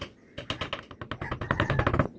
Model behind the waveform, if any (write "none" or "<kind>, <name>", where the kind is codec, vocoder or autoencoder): none